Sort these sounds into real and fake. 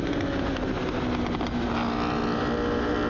real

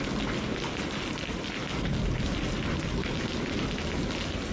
real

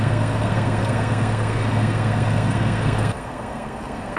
fake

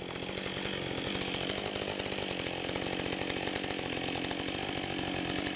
real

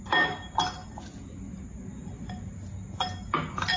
real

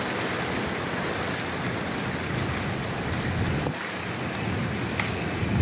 real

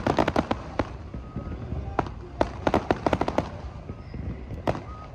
real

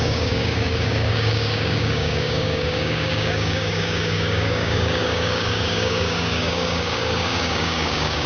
fake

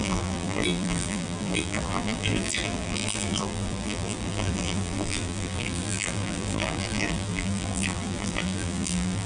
fake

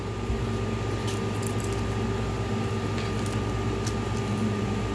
real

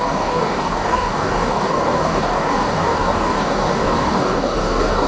fake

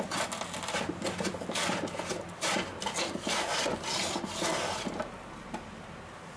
real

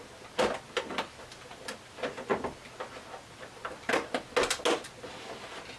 real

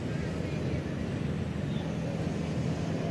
real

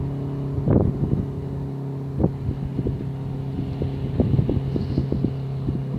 real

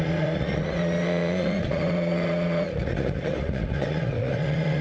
fake